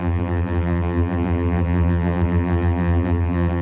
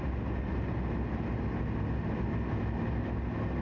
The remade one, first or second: first